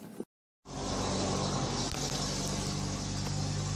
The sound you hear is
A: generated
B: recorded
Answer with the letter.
B